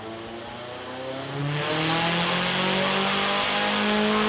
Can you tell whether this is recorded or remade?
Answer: recorded